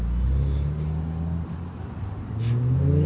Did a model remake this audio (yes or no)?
no